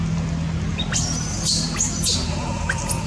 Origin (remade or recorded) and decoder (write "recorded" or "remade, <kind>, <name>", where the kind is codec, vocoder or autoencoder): recorded